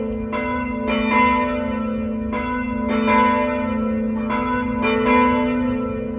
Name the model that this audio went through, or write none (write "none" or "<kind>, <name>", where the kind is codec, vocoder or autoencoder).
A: none